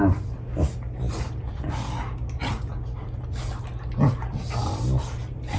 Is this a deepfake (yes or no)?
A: no